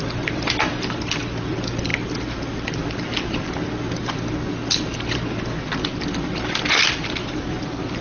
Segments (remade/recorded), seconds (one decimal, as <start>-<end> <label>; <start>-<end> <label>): 0.0-1.9 remade; 1.9-6.7 recorded; 6.7-8.0 remade